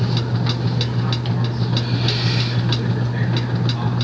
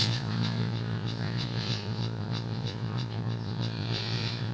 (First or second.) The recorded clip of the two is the first